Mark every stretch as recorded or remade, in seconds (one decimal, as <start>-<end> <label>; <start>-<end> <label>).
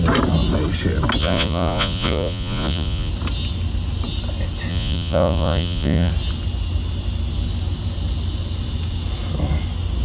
0.0-1.2 recorded; 1.2-3.1 remade; 3.1-4.7 recorded; 4.7-6.1 remade; 6.1-10.0 recorded